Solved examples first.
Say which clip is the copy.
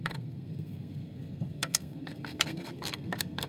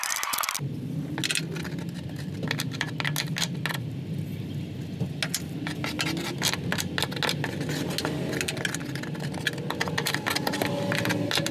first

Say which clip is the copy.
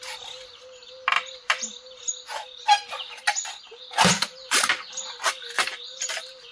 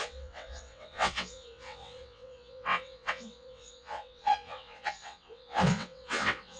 second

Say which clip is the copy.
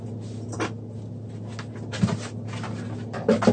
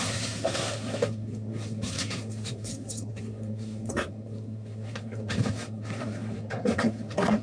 second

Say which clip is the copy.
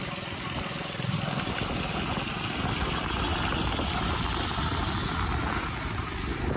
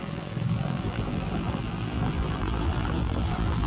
second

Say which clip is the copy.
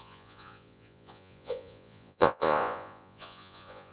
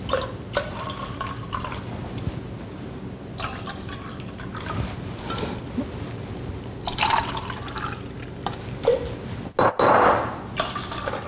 first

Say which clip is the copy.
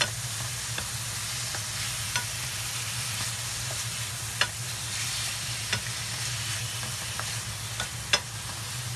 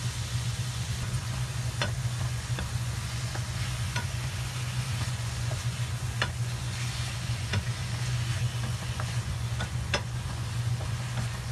second